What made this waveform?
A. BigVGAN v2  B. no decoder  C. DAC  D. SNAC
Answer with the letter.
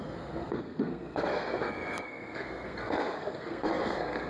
D